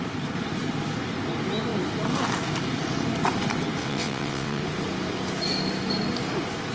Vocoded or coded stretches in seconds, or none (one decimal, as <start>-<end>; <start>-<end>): 3.8-4.6